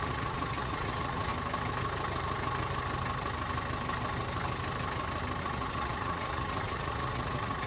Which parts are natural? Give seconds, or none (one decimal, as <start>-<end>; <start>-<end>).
1.3-5.4